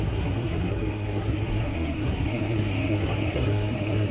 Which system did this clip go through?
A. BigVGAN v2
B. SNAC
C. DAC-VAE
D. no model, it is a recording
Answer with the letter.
B